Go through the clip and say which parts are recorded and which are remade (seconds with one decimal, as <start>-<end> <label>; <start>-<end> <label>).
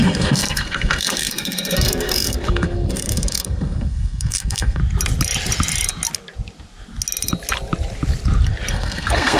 0.0-4.8 remade; 4.8-8.7 recorded; 8.7-9.4 remade